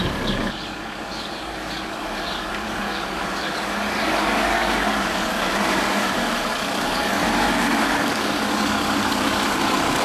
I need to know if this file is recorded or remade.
remade